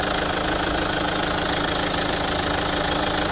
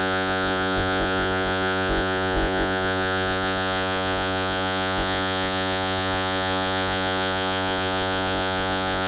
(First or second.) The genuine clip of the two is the first